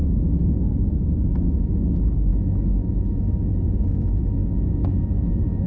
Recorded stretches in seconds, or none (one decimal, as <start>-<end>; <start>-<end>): 0.0-4.4